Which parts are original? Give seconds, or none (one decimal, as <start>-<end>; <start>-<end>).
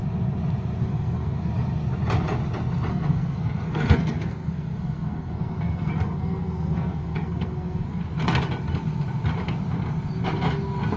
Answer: 0.0-0.8; 1.5-2.9; 8.0-11.0